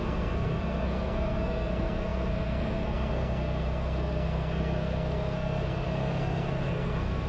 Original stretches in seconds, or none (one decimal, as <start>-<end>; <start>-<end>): none